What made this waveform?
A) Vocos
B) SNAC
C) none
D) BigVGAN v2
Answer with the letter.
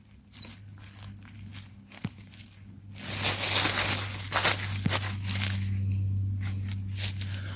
C